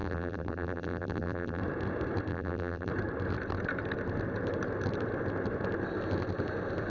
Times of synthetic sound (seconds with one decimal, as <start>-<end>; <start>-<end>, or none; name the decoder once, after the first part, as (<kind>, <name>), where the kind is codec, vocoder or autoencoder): 0.0-1.6 (vocoder, BigVGAN v2); 2.3-2.9